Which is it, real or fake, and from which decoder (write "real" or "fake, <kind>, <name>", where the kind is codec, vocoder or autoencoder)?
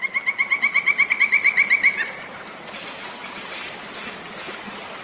real